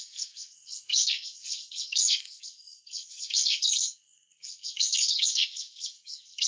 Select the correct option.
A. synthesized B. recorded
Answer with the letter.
A